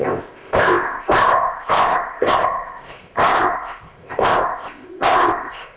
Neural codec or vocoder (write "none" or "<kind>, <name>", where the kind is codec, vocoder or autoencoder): codec, ZipCodec